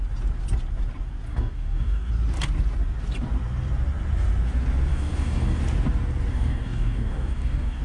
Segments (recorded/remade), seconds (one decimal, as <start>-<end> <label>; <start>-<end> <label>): 0.0-1.3 recorded; 1.3-2.1 remade; 2.1-4.9 recorded; 4.9-5.6 remade; 5.6-6.3 recorded; 6.3-7.8 remade